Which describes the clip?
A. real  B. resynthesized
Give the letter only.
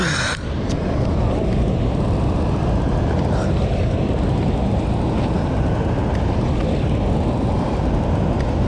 A